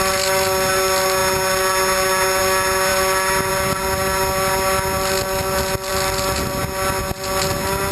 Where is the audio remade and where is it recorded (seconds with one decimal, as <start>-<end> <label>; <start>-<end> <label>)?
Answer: 0.0-7.9 recorded